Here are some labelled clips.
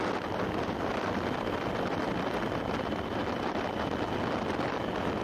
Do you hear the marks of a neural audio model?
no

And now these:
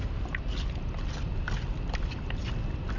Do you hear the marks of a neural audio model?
no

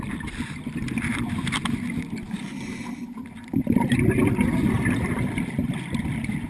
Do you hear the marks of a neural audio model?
no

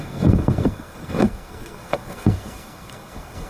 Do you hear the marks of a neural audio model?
yes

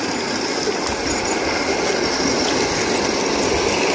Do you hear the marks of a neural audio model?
no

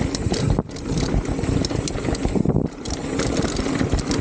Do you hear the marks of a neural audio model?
no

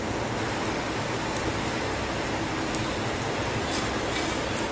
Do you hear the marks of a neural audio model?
no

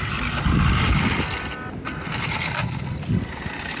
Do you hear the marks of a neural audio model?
no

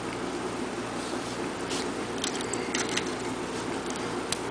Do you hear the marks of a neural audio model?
yes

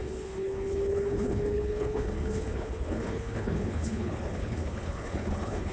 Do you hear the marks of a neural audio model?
yes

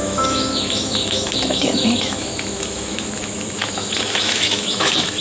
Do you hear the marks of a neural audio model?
yes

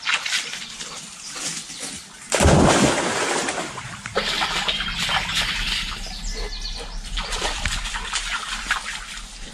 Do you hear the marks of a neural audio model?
no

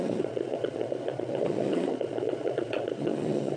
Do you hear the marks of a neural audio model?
yes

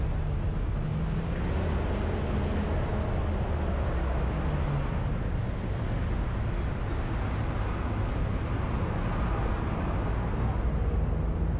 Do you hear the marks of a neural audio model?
no